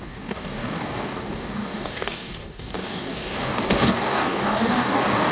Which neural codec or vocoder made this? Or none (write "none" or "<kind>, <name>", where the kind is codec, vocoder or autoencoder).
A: codec, DAC